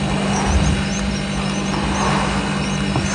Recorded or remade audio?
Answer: recorded